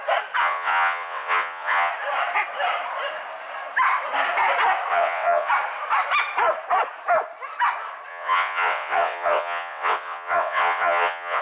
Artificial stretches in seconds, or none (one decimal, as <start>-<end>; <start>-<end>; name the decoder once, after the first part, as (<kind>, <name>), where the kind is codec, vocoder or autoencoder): 0.4-1.9 (vocoder, WaveNeXt); 4.9-5.5; 8.1-11.4